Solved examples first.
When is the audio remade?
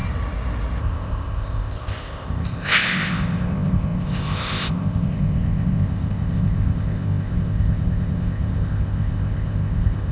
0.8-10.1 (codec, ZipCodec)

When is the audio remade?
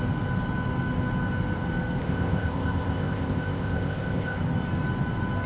2.0-4.4 (codec, ZipCodec)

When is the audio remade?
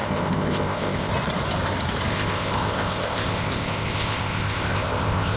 0.0-1.1 (codec, ZipCodec); 2.1-5.4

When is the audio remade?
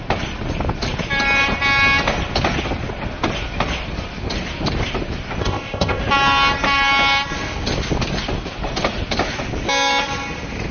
5.4-6.0 (codec, ZipCodec)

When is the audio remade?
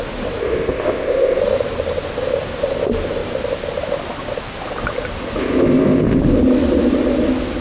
0.4-1.4 (codec, ZipCodec); 5.4-6.2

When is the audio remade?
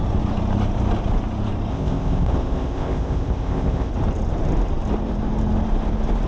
1.7-3.9 (codec, ZipCodec)